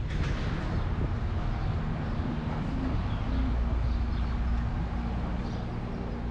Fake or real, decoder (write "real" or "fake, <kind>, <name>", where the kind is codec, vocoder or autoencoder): real